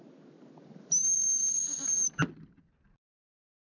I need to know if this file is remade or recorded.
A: recorded